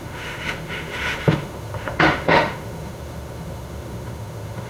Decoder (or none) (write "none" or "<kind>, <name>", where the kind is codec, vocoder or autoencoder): autoencoder, DAC-VAE